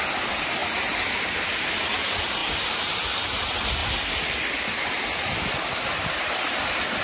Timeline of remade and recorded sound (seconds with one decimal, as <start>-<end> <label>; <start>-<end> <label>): 0.0-0.6 remade; 0.6-1.2 recorded; 1.2-3.8 remade; 3.8-4.4 recorded; 4.4-7.0 remade